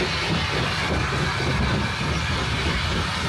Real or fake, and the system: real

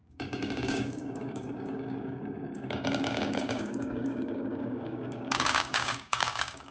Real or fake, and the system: fake, codec, DAC